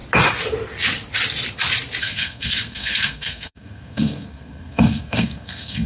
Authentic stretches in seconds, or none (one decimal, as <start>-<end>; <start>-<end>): 0.0-2.0